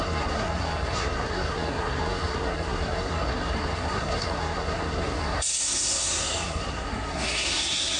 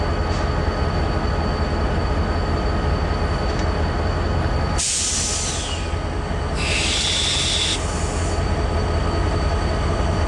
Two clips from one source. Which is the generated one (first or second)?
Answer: first